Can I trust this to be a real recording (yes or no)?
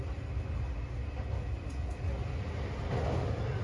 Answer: yes